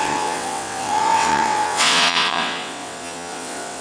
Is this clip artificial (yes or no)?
yes